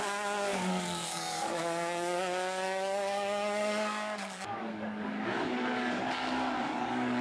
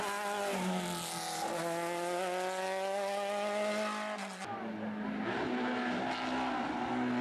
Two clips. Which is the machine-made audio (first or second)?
first